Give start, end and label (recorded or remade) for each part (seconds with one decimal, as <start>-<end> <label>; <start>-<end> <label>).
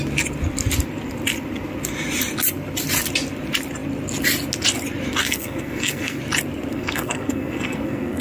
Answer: 0.0-5.2 recorded; 5.2-6.2 remade; 6.2-6.7 recorded; 6.7-8.2 remade